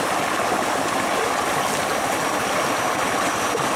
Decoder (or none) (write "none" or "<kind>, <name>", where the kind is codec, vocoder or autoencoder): none